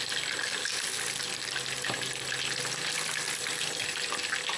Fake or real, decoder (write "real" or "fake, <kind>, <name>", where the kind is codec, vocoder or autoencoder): real